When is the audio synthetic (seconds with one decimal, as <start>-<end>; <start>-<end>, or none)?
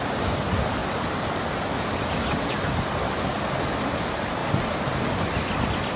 4.4-5.6